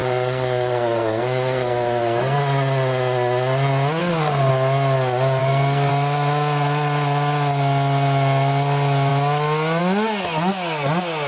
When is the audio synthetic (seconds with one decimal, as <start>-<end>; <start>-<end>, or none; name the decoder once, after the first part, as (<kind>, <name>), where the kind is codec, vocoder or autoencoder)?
0.0-2.4 (codec, SNAC); 4.0-4.5; 5.4-5.9